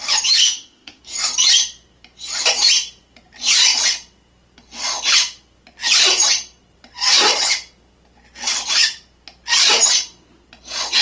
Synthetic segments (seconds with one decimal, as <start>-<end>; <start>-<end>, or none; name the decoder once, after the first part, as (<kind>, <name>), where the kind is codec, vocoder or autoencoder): 0.4-1.0 (autoencoder, DAC-VAE)